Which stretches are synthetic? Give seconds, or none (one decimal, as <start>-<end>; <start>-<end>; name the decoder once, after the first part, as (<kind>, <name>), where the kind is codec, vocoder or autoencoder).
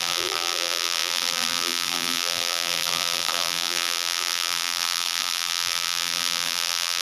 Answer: 0.0-7.0 (vocoder, BigVGAN v2)